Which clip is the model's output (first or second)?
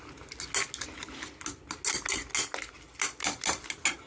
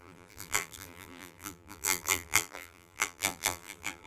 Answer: second